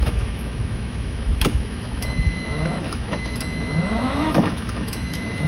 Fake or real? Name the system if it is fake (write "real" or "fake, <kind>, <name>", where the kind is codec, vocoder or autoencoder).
fake, autoencoder, DAC-VAE